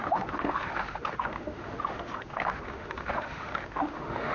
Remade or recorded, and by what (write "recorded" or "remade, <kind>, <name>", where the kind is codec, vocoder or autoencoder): remade, autoencoder, DAC-VAE